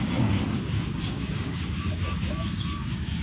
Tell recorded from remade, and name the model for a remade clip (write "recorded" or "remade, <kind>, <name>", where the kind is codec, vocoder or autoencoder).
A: remade, codec, DAC